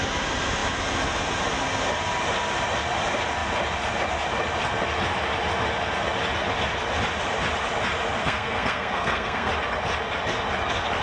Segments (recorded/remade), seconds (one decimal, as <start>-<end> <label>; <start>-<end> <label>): 0.0-8.2 recorded; 8.2-9.5 remade; 9.5-11.0 recorded